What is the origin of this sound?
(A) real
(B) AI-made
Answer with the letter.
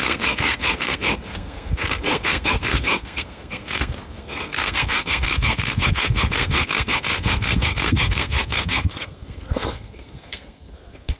B